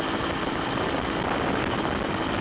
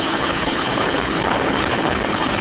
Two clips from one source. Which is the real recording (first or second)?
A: first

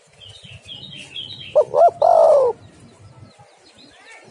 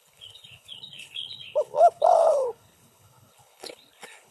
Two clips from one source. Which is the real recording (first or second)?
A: first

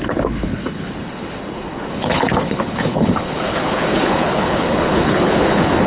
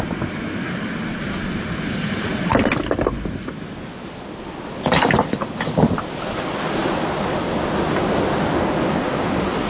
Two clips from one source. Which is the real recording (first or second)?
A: second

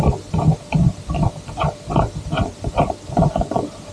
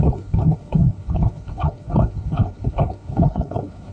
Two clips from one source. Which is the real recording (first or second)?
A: first